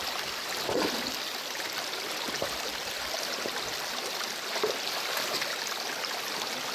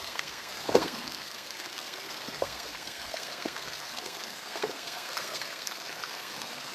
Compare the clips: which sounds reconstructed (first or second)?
second